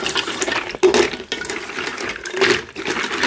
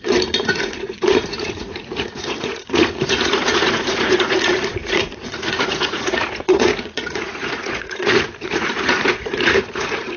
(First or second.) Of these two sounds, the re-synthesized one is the second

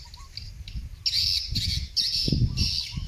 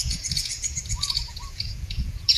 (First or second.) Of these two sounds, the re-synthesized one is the second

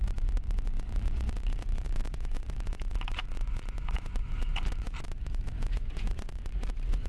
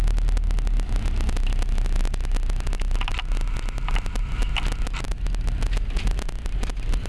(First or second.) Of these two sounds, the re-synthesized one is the first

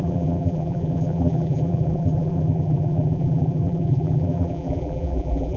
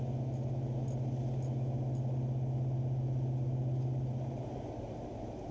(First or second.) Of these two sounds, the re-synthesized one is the first